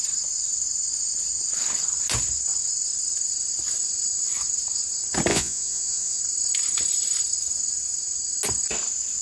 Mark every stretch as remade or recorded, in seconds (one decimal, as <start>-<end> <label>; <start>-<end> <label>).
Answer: 0.0-5.3 recorded; 5.3-6.2 remade; 6.2-9.2 recorded